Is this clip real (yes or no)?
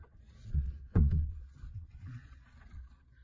no